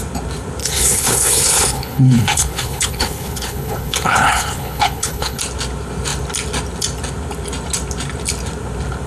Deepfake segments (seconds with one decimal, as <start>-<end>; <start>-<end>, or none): 0.6-5.4

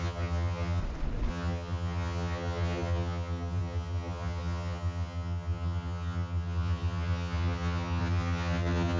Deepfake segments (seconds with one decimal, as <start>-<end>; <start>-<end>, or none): 0.0-0.8; 1.3-9.0

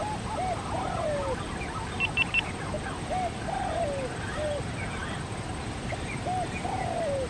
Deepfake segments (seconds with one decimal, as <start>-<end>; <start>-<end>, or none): none

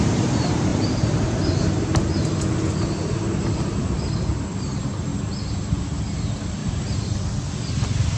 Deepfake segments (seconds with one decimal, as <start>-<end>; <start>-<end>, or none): none